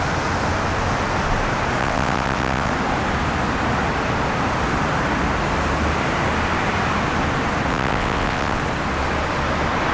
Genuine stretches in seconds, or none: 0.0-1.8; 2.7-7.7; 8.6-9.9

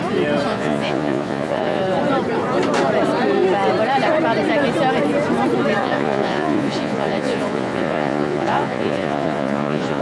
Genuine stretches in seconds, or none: 0.0-0.5; 1.8-5.8

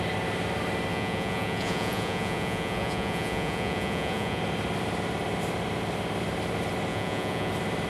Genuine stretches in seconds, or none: 0.0-0.9; 4.4-6.9; 7.5-7.9

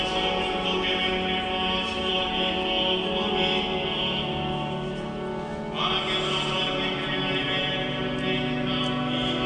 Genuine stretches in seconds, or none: 0.0-9.5

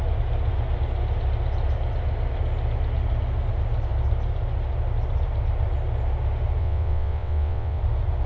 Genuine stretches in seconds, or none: 0.0-6.6; 7.8-8.3

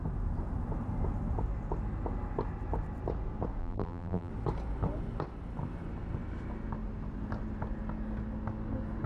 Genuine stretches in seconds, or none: 0.0-3.6; 4.3-9.1